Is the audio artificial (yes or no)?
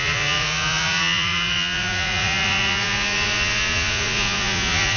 yes